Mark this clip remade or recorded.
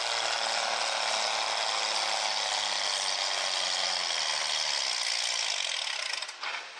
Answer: recorded